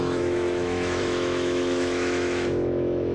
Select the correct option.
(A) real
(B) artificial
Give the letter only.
B